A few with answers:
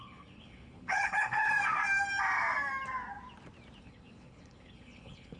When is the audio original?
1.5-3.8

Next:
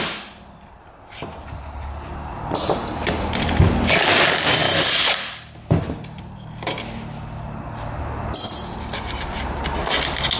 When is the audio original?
0.0-10.4

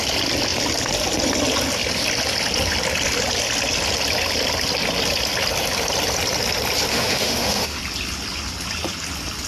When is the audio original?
0.0-6.9; 7.8-9.5

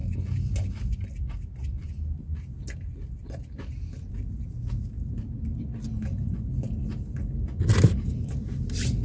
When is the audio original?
0.0-9.0

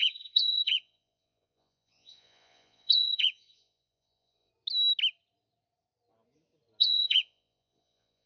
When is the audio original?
4.5-6.8

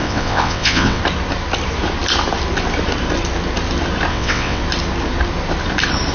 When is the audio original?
1.0-4.1; 4.6-6.1